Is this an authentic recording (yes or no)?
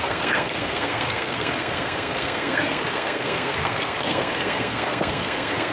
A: no